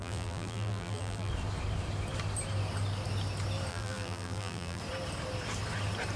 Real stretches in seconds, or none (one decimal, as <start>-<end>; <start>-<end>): 1.3-3.7; 4.8-6.2